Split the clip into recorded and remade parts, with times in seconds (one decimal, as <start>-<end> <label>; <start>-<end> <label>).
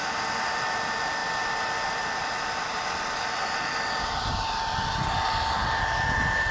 0.0-6.5 recorded